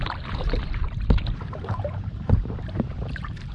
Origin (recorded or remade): remade